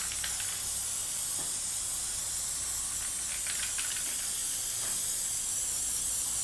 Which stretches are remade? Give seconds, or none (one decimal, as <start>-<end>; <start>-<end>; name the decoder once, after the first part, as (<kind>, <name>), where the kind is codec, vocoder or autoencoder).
none

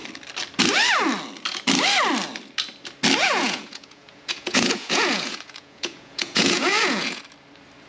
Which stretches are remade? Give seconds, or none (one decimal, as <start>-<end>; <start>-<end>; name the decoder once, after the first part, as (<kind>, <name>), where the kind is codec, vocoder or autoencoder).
3.2-7.2 (vocoder, Vocos)